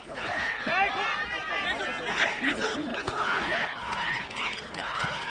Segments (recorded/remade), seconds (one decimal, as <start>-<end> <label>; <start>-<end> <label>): 0.0-0.7 remade; 0.7-2.1 recorded; 2.1-5.3 remade